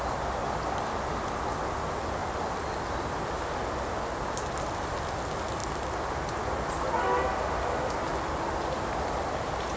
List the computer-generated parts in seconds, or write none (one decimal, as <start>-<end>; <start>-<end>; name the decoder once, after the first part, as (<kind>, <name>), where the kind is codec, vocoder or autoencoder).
2.2-3.7 (vocoder, BigVGAN v2); 5.6-6.3; 8.1-9.3